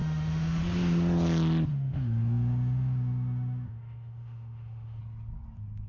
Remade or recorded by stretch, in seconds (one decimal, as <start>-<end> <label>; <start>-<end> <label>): 0.0-0.6 remade; 0.6-1.7 recorded; 1.7-5.0 remade; 5.0-5.9 recorded

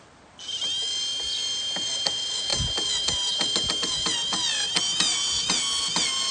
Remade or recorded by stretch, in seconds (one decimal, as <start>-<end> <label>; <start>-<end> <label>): 0.0-6.3 recorded

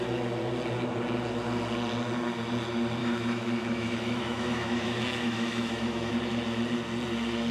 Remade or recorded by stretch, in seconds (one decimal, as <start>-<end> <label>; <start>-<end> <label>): 0.0-3.0 recorded; 3.0-6.1 remade; 6.1-7.5 recorded